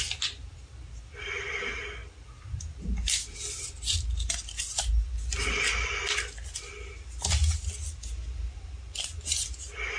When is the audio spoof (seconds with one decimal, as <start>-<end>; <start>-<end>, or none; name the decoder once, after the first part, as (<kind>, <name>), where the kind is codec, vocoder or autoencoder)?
none